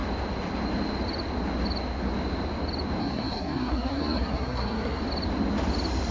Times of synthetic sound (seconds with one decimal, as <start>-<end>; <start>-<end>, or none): 3.0-5.0